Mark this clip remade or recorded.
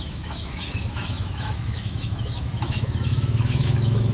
remade